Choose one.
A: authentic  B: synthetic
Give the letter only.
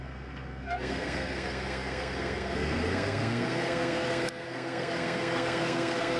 B